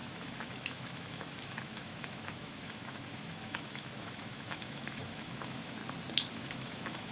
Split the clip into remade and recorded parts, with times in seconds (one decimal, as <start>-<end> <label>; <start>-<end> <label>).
0.0-5.8 remade; 5.8-6.3 recorded; 6.3-7.1 remade